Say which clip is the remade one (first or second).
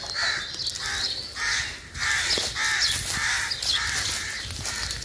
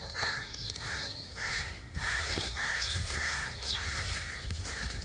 second